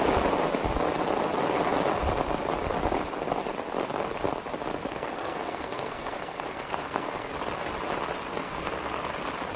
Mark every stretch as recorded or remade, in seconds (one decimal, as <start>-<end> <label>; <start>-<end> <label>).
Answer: 0.0-4.9 recorded; 4.9-7.3 remade; 7.3-8.3 recorded; 8.3-9.1 remade; 9.1-9.6 recorded